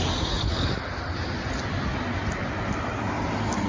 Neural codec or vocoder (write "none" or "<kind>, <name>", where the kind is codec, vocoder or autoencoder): none